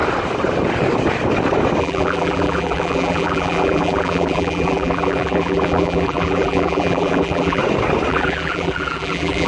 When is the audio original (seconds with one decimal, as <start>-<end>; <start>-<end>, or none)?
0.0-1.8; 7.6-8.1